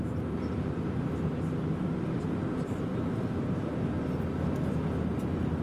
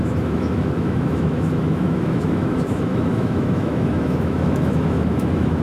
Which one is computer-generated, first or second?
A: second